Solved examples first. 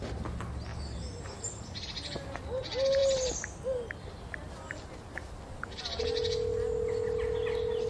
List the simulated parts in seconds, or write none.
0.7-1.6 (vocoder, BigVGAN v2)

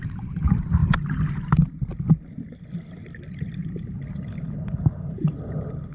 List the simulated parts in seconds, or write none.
none

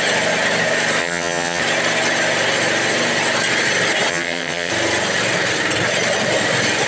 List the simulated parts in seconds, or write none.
1.0-1.6 (vocoder, HiFi-GAN); 4.1-4.7

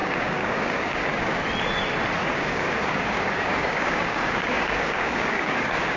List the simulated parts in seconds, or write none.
0.0-1.4 (codec, DAC); 2.2-6.0

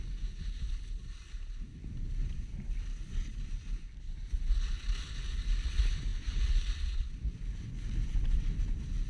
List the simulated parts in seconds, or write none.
none